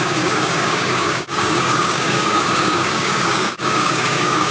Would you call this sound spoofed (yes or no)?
yes